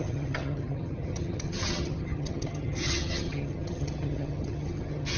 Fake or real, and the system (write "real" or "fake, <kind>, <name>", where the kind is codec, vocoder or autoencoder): fake, vocoder, HiFi-GAN